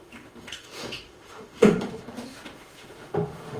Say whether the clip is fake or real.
fake